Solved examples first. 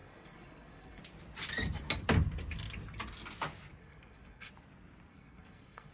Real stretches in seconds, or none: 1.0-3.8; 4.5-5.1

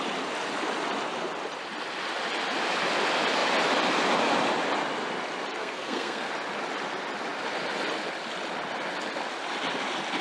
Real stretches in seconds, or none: 0.0-5.5; 6.3-10.2

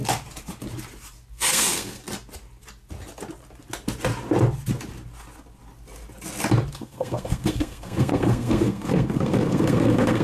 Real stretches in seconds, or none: 0.0-1.3; 2.0-6.7

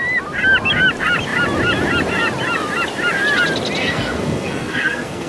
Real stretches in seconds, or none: 0.0-3.8

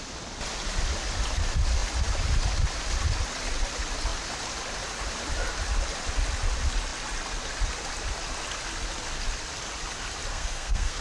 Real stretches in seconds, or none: 0.0-10.3

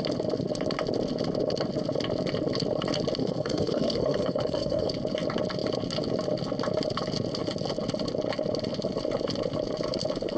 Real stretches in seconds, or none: 0.0-3.2; 4.9-10.4